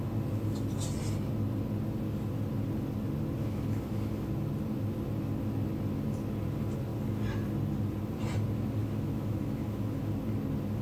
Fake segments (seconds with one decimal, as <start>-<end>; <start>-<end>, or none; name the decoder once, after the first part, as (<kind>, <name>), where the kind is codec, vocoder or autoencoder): 3.4-4.3 (autoencoder, DAC-VAE); 8.8-10.1